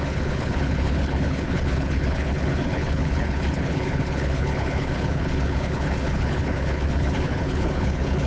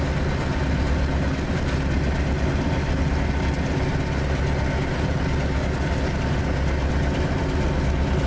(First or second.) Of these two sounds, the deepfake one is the first